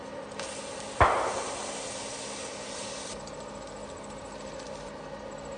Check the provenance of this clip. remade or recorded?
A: recorded